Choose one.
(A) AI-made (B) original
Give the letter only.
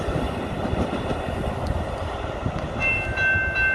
B